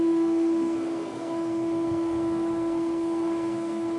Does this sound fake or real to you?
fake